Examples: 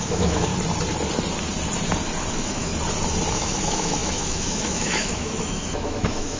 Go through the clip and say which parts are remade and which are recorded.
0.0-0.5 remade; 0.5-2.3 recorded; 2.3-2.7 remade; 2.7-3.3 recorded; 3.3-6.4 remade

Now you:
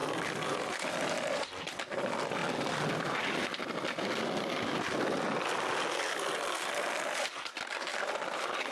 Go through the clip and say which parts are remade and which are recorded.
0.0-2.4 remade; 2.4-7.4 recorded; 7.4-8.7 remade

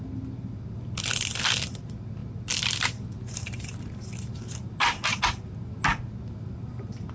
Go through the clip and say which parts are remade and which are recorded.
0.0-7.1 recorded

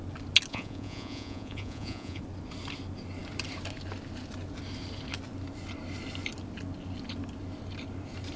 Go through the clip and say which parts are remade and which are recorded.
0.0-0.5 recorded; 0.5-2.2 remade; 2.2-8.4 recorded